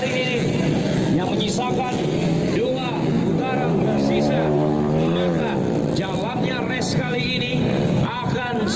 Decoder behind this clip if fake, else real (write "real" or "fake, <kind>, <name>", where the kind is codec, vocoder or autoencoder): real